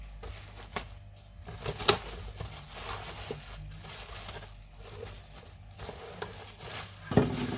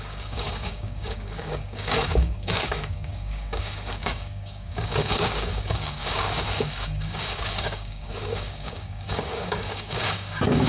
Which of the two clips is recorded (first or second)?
first